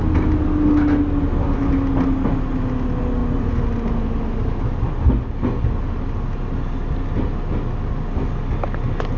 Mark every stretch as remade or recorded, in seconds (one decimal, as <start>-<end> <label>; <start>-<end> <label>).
0.0-9.2 recorded